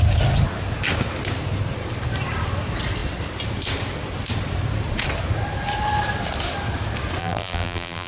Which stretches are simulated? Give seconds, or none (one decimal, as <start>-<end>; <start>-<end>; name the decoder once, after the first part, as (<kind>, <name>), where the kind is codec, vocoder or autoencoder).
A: 7.2-8.1 (vocoder, BigVGAN v2)